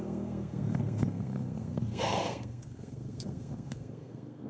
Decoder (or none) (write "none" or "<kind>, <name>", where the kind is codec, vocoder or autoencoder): codec, SNAC